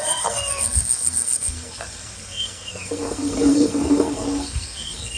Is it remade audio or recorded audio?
remade